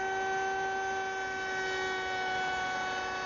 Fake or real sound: real